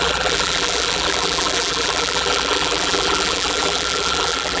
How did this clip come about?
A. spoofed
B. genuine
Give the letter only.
A